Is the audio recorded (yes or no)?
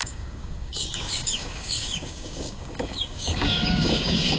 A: no